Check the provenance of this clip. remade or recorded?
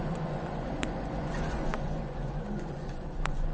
remade